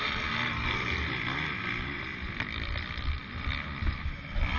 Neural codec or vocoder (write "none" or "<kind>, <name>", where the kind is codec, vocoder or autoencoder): none